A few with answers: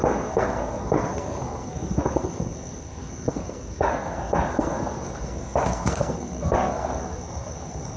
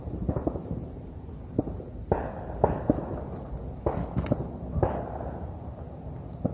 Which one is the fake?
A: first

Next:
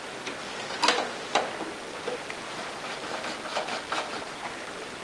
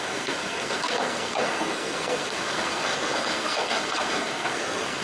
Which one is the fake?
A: second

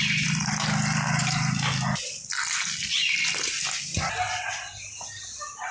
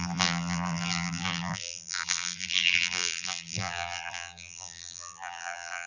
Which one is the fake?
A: second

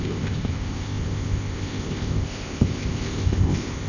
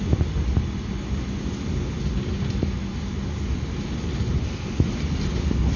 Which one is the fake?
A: first